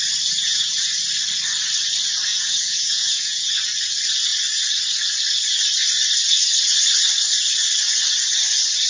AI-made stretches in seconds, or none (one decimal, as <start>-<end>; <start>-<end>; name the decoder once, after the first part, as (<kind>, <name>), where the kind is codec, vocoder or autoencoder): 0.4-0.9 (vocoder, Vocos); 2.3-3.5